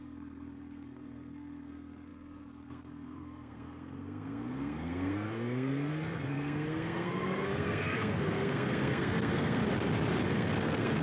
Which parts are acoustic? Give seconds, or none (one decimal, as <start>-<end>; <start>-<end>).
9.6-10.3